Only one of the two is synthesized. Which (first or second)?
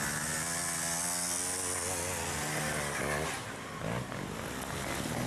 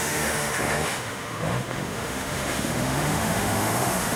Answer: second